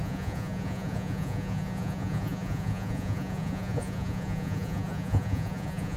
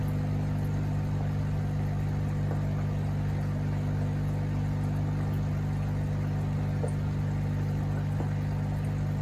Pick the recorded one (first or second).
second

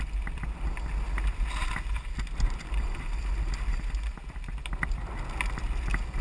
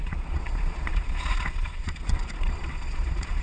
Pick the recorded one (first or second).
first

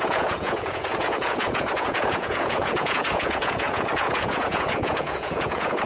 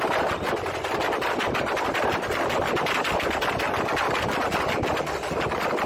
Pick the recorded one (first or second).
second